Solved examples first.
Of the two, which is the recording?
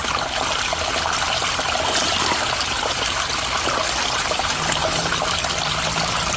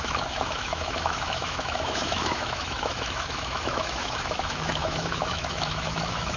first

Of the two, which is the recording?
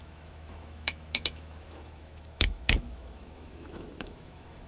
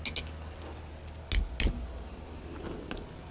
second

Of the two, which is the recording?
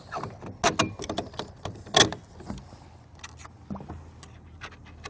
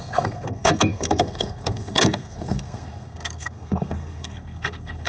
first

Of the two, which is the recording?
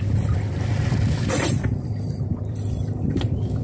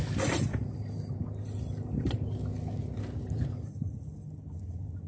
second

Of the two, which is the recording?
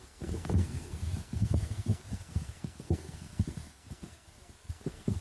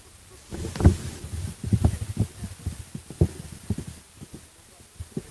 second